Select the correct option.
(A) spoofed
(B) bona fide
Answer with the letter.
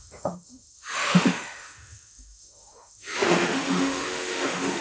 A